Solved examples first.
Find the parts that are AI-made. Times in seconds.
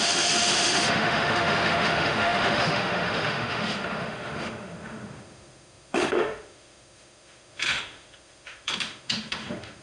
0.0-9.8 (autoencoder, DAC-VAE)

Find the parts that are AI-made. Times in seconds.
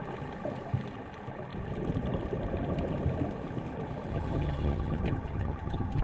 4.1-6.0 (vocoder, HiFi-GAN)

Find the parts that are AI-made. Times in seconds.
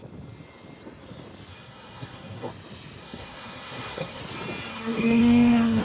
1.5-2.5 (codec, SNAC); 3.0-4.2; 4.7-5.8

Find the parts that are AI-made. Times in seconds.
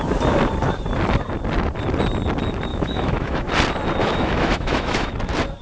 2.7-3.5 (autoencoder, DAC-VAE); 4.0-5.1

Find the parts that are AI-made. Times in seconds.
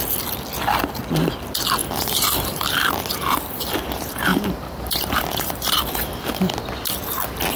1.8-2.9 (vocoder, BigVGAN v2); 4.3-5.8